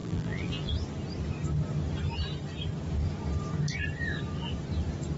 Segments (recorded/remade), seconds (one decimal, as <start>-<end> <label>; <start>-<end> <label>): 0.0-0.7 remade; 0.7-5.2 recorded